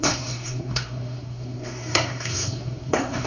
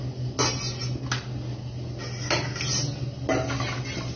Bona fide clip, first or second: second